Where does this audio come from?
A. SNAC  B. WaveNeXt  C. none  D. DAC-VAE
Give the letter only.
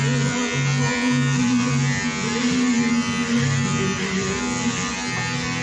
C